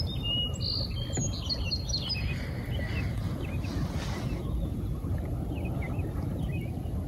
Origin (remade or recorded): recorded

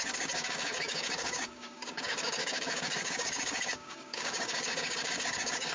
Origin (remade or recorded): remade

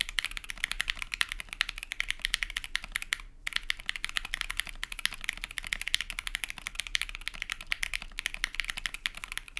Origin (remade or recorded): recorded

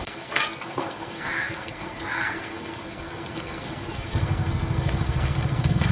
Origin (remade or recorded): remade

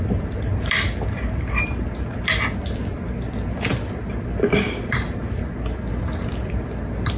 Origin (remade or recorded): recorded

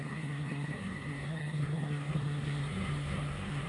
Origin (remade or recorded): remade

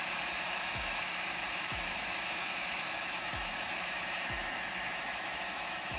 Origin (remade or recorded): remade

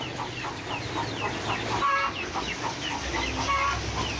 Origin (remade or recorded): recorded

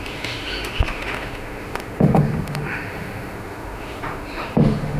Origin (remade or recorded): remade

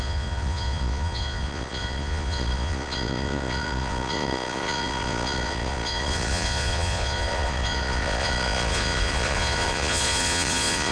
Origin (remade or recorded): remade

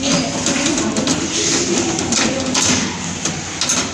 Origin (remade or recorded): recorded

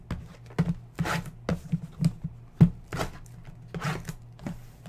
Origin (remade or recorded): recorded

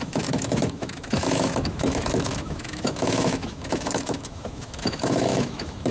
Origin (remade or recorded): remade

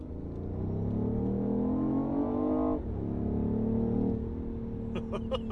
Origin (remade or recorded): recorded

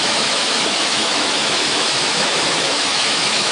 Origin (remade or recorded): remade